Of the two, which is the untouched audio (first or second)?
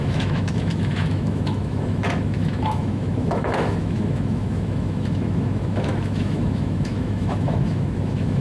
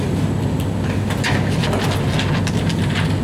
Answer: second